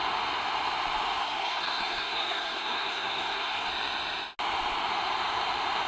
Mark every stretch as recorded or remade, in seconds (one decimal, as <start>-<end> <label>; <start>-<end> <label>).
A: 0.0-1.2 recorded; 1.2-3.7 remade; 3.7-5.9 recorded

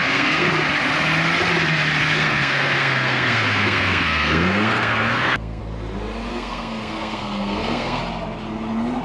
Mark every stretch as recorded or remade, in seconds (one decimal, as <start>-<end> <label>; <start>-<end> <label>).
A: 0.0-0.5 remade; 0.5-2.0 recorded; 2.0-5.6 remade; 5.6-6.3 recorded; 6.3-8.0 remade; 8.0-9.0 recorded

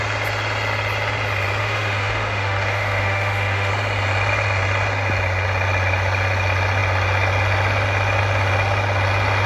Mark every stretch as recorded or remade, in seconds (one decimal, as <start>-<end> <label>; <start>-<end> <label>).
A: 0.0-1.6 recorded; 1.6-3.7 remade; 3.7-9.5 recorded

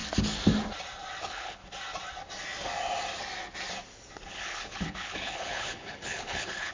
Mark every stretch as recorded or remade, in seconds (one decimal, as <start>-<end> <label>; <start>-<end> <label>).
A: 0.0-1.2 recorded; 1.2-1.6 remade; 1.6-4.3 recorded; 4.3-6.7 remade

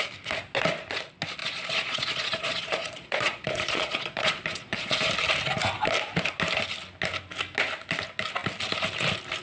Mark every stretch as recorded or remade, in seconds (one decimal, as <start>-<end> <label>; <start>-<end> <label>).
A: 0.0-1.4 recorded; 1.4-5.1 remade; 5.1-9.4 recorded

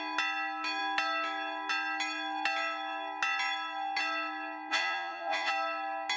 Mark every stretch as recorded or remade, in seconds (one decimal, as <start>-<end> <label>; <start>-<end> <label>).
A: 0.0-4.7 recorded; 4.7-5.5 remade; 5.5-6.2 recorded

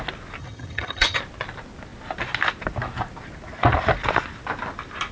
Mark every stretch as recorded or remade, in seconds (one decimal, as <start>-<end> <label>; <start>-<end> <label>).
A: 0.0-0.4 recorded; 0.4-1.2 remade; 1.2-5.1 recorded

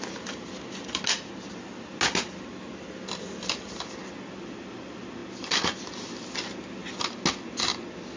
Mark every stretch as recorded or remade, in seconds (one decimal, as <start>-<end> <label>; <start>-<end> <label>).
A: 0.0-8.2 recorded